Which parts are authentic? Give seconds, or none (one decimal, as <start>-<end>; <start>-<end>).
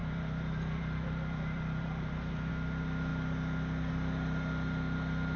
2.5-5.4